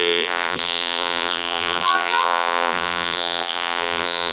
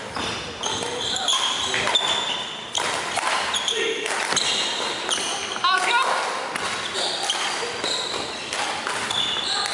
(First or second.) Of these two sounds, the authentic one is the second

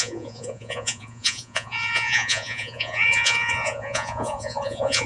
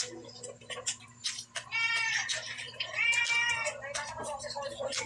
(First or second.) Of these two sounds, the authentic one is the second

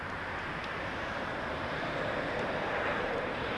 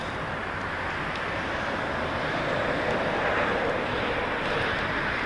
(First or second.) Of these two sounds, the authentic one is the second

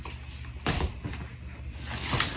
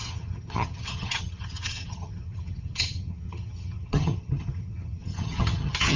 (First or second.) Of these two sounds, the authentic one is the first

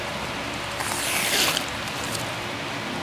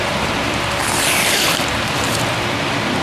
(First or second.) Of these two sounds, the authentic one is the first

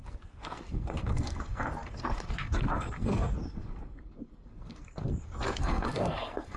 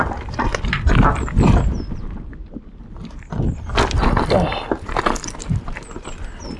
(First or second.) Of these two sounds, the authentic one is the second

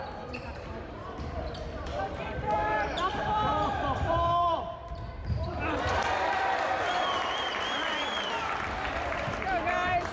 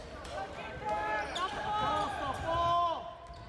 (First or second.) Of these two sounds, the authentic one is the second